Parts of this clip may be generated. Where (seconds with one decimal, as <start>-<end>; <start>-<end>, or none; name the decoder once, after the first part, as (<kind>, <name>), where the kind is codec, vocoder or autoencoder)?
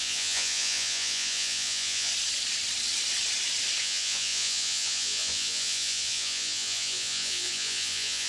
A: 0.0-2.1 (vocoder, Vocos); 3.8-8.3